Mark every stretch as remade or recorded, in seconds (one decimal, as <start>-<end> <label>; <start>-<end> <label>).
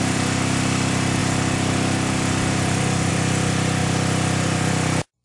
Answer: 0.0-5.2 recorded